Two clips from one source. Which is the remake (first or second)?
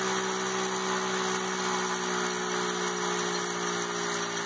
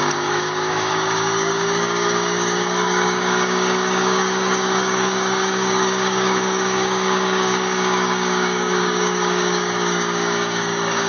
second